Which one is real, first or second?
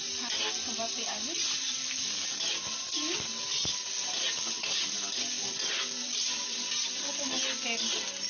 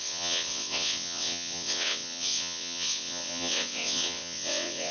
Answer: first